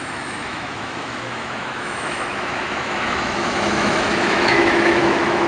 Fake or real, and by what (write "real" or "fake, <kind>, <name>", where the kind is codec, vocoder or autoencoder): fake, autoencoder, DAC-VAE